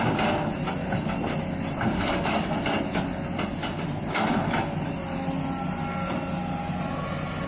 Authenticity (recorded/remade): recorded